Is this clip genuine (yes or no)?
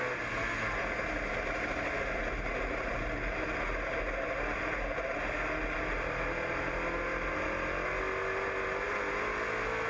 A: yes